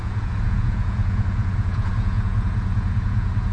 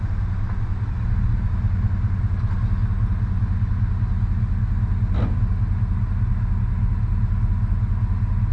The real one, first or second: second